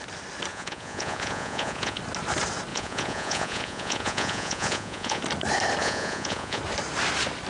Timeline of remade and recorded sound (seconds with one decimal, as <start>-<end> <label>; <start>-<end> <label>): 0.0-0.5 recorded; 0.5-2.0 remade; 2.0-2.7 recorded; 2.7-5.2 remade; 5.2-5.8 recorded; 5.8-6.6 remade; 6.6-7.5 recorded

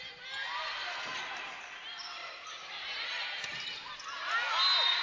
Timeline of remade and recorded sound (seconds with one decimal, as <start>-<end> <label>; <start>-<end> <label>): 0.0-2.2 recorded; 2.2-2.7 remade; 2.7-5.0 recorded

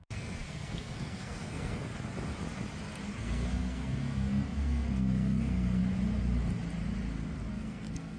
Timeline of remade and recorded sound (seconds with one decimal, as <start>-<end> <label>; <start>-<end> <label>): 0.0-1.9 remade; 1.9-3.1 recorded; 3.1-5.8 remade; 5.8-7.5 recorded; 7.5-8.2 remade

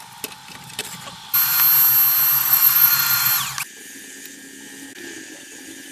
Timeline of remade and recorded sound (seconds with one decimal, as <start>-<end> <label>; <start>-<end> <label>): 0.0-2.4 recorded; 2.4-3.3 remade; 3.3-5.9 recorded